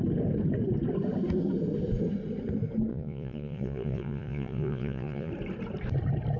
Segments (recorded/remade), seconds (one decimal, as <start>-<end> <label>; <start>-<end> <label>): 0.0-2.9 recorded; 2.9-5.3 remade; 5.3-6.4 recorded